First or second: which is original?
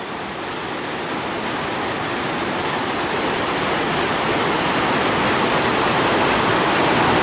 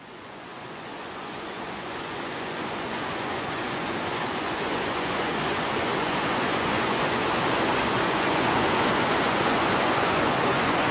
first